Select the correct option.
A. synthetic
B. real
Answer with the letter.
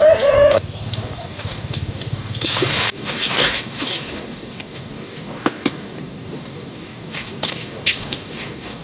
A